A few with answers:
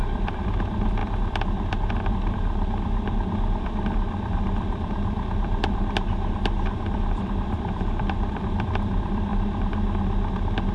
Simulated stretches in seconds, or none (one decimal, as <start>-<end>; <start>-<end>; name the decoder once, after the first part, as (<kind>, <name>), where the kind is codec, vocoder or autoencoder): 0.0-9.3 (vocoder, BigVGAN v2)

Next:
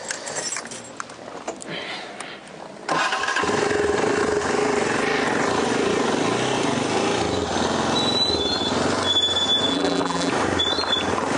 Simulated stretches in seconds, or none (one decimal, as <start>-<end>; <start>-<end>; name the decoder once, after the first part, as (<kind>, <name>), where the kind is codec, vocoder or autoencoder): 9.7-10.3 (vocoder, BigVGAN v2)

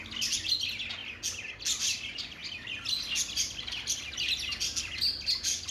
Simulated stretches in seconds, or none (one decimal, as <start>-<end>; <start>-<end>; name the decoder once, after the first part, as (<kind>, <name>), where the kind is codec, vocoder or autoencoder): none